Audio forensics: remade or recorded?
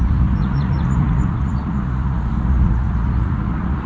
remade